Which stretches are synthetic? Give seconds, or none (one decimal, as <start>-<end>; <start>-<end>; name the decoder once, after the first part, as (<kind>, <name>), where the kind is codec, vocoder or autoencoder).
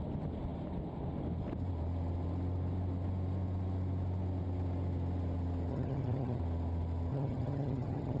5.7-6.4 (vocoder, HiFi-GAN); 7.1-8.2